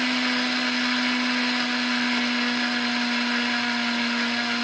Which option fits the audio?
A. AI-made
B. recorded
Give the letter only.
B